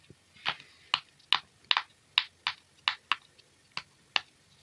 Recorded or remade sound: recorded